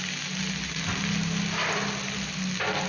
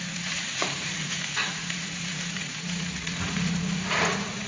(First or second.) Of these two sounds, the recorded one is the first